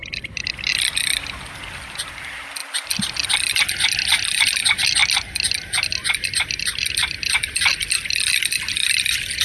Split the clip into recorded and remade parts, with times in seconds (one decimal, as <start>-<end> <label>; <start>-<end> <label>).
0.0-9.4 recorded